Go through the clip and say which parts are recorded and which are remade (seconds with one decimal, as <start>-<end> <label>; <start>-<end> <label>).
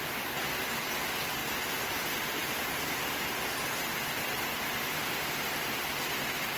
0.0-6.6 recorded